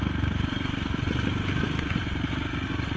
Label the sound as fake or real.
real